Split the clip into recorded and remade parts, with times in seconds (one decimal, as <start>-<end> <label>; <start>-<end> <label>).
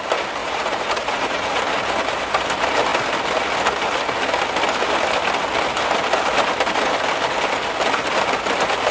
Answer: 0.0-0.4 recorded; 0.4-1.6 remade; 1.6-8.9 recorded